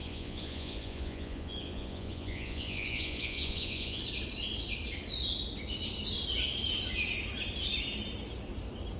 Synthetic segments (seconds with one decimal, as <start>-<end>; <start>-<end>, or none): 0.0-4.0

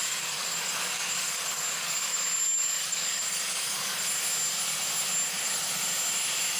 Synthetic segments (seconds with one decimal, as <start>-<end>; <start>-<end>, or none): 0.0-4.0

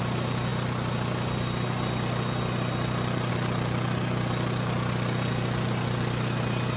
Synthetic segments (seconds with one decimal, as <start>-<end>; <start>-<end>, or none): none

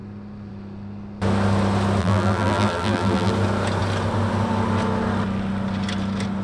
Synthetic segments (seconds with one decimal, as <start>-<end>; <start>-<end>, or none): 2.0-3.3

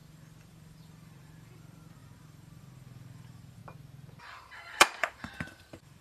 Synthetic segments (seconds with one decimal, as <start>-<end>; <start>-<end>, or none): 0.0-3.6; 4.2-6.0

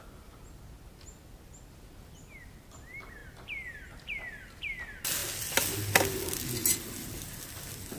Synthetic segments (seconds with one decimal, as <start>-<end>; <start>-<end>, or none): none

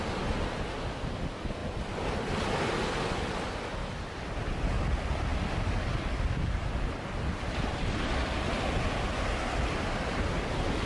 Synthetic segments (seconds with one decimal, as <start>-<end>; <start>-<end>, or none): none

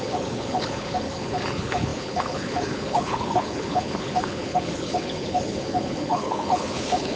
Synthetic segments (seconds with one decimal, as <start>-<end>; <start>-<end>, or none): 0.0-7.2